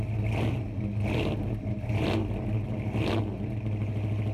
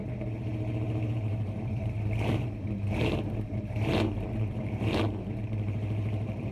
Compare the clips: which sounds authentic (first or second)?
first